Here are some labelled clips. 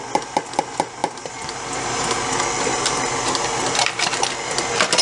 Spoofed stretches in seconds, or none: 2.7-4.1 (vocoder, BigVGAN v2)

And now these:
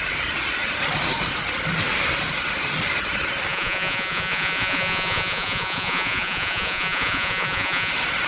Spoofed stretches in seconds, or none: 3.5-7.9 (vocoder, Vocos)

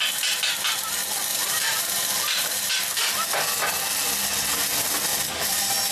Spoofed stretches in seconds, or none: 1.3-2.7 (vocoder, BigVGAN v2)